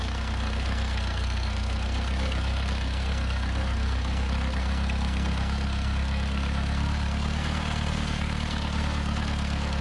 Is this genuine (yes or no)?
no